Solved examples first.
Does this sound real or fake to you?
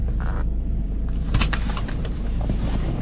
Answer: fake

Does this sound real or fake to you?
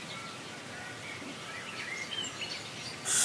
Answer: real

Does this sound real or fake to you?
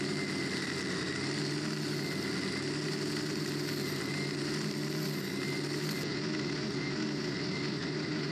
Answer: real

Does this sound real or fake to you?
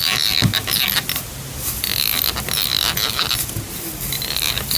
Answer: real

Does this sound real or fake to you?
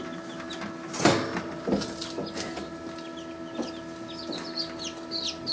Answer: real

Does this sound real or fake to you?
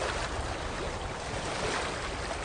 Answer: real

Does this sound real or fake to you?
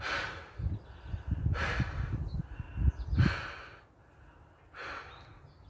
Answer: real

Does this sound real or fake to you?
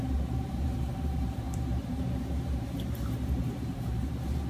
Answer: fake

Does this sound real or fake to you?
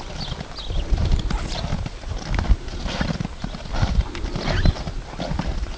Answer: real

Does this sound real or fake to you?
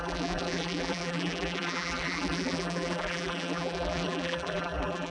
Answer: fake